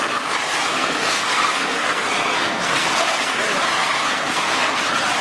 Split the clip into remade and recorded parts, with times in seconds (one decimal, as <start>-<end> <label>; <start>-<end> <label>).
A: 0.0-0.7 recorded; 0.7-3.4 remade; 3.4-3.8 recorded; 3.8-4.8 remade; 4.8-5.2 recorded